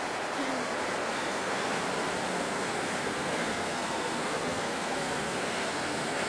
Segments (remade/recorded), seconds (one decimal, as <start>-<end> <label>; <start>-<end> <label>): 0.0-1.0 recorded; 1.0-1.8 remade; 1.8-2.3 recorded; 2.3-6.3 remade